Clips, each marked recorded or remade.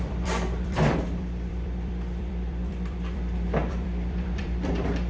remade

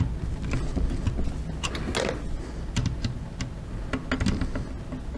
recorded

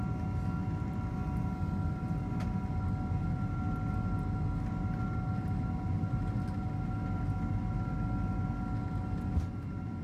recorded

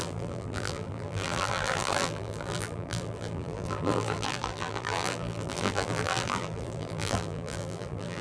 remade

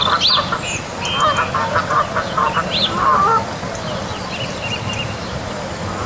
recorded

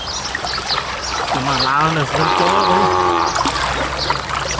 recorded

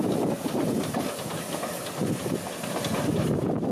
recorded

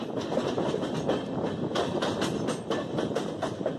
remade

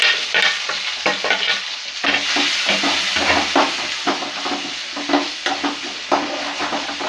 recorded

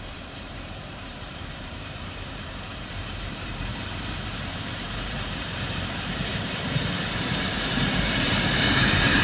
remade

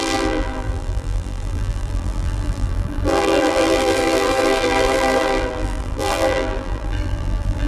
remade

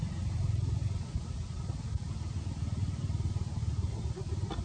recorded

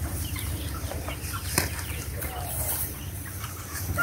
remade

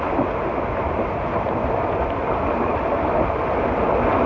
recorded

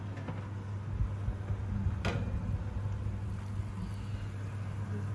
recorded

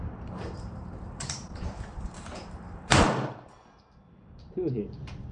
remade